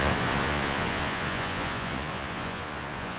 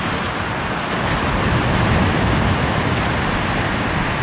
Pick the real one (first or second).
second